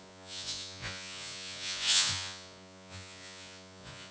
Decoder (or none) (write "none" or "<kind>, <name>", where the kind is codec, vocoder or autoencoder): vocoder, Vocos